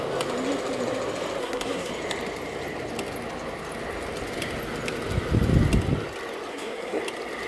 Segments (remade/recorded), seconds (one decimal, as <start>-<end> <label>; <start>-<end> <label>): 0.0-1.4 recorded; 1.4-1.9 remade; 1.9-6.5 recorded; 6.5-7.0 remade; 7.0-7.5 recorded